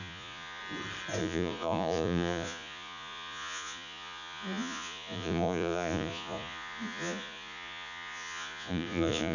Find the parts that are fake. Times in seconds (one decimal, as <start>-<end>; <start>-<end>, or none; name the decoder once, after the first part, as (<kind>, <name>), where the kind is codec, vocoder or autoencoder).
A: 0.0-0.6 (vocoder, Vocos); 1.2-9.3